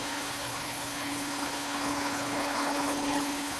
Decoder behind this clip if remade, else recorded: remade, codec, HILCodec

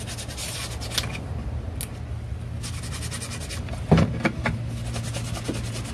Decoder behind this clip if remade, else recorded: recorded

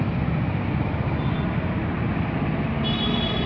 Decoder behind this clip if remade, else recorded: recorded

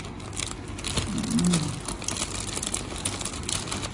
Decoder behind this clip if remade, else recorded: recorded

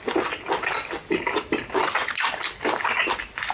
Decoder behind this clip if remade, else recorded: recorded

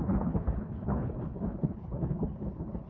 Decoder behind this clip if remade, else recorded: remade, codec, HILCodec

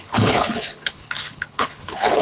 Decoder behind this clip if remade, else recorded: remade, codec, HILCodec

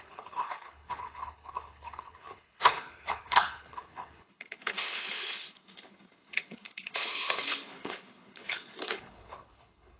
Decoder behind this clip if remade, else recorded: remade, codec, HILCodec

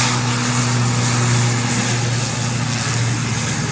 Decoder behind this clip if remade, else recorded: recorded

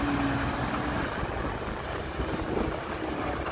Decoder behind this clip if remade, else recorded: recorded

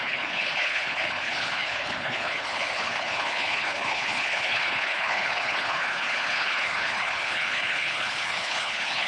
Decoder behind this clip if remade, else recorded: remade, codec, HILCodec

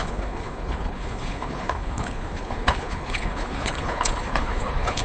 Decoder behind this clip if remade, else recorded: remade, codec, HILCodec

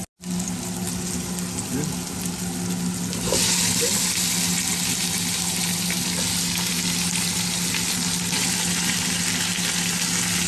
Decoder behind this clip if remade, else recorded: recorded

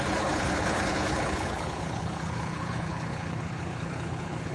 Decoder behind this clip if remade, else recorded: remade, codec, HILCodec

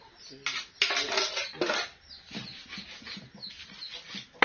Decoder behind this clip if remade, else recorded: recorded